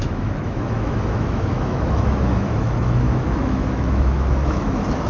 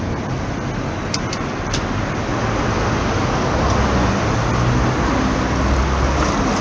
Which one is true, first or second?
second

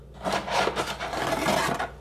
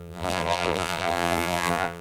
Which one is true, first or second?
first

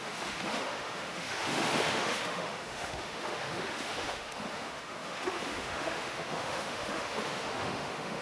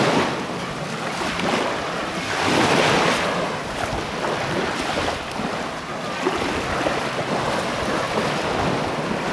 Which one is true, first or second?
second